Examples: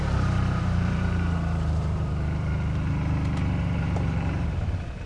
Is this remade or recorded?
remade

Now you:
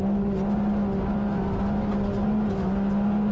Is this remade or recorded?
recorded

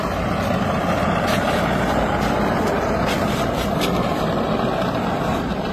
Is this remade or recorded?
remade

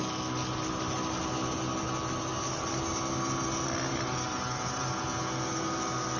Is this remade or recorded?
recorded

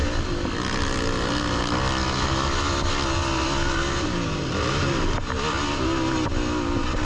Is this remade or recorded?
recorded